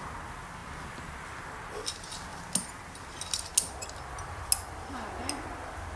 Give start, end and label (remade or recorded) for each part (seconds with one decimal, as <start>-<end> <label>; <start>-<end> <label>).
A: 0.0-6.0 recorded